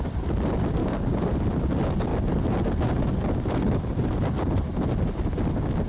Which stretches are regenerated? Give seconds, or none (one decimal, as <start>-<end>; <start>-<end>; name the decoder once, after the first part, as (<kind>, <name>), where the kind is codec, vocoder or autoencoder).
0.8-1.4 (codec, DAC)